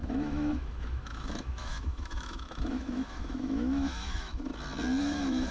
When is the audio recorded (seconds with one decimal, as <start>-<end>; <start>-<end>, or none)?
4.5-5.0